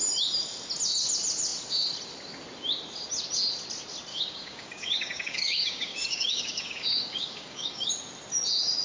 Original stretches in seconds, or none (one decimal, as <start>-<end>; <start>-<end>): 0.0-4.1; 7.9-8.8